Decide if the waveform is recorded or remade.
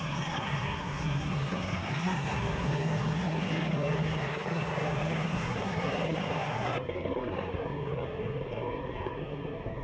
remade